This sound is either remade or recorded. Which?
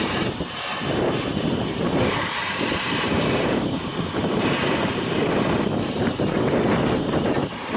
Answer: remade